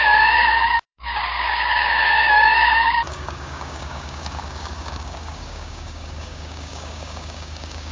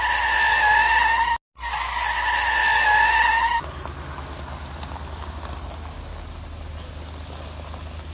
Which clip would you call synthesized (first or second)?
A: first